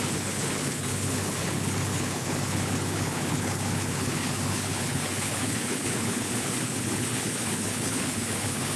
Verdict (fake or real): fake